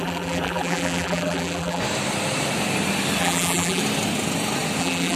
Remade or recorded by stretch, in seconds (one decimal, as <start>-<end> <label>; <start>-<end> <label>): 0.0-1.8 remade; 1.8-3.2 recorded; 3.2-3.8 remade; 3.8-4.8 recorded; 4.8-5.2 remade

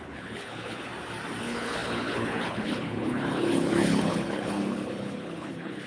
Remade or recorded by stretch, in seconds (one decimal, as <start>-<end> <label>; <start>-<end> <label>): 0.0-0.9 remade; 0.9-1.4 recorded; 1.4-5.9 remade

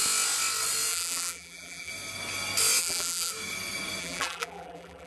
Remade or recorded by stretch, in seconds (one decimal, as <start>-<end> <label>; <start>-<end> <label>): 0.0-0.9 recorded; 0.9-1.9 remade; 1.9-2.8 recorded; 2.8-3.3 remade; 3.3-4.0 recorded; 4.0-5.1 remade

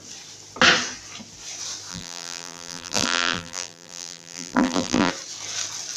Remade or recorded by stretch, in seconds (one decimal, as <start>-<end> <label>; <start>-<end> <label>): 0.0-1.9 recorded; 1.9-5.1 remade; 5.1-6.0 recorded

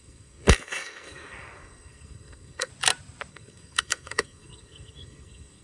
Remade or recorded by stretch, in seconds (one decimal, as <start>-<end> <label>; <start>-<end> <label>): 0.0-2.7 remade; 2.7-3.3 recorded; 3.3-5.6 remade

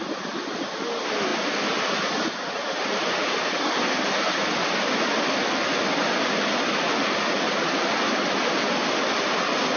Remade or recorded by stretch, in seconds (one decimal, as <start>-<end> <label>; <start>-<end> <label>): 0.0-9.8 recorded